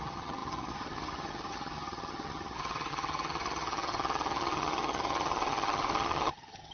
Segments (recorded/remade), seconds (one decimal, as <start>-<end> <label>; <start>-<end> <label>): 0.0-6.7 remade